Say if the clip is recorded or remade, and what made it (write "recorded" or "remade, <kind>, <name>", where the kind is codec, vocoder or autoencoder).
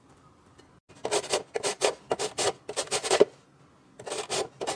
recorded